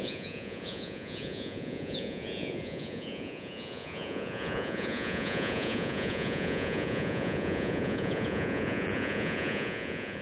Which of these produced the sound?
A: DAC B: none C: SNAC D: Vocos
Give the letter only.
D